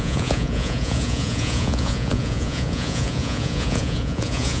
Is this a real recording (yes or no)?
no